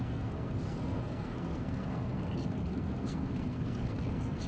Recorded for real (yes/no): no